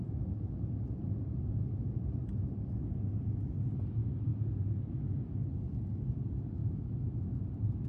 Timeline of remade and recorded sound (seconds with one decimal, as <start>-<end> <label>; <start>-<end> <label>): 0.0-6.6 recorded; 6.6-7.5 remade; 7.5-7.9 recorded